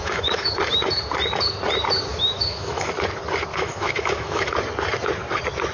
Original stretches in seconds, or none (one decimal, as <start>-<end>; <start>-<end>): 0.5-2.1; 2.9-3.5; 4.5-5.7